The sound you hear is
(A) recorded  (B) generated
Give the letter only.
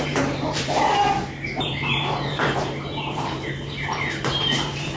B